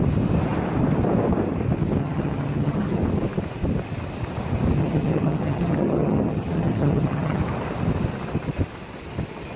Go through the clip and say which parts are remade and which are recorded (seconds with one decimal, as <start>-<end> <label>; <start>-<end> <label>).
0.0-2.0 recorded; 2.0-3.0 remade; 3.0-4.8 recorded; 4.8-7.4 remade; 7.4-9.6 recorded